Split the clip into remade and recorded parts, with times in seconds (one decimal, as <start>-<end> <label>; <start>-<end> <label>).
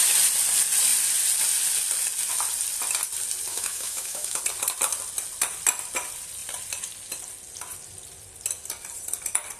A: 0.0-3.5 recorded; 3.5-4.4 remade; 4.4-9.6 recorded